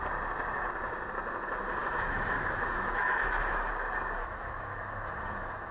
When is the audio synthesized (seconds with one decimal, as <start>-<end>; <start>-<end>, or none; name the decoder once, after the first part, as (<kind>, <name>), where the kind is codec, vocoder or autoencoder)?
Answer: 1.8-3.7 (autoencoder, DAC-VAE); 4.2-5.7